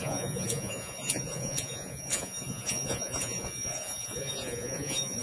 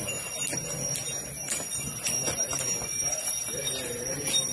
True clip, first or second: second